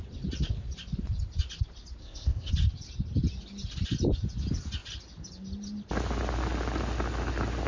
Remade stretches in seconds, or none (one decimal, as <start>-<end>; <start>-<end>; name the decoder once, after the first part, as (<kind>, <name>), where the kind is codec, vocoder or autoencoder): 2.0-2.5 (codec, ZipCodec)